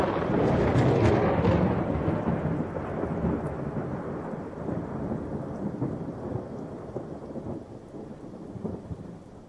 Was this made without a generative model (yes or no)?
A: yes